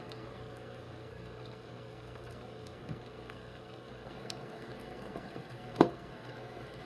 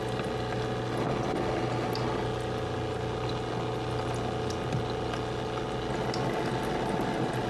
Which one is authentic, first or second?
second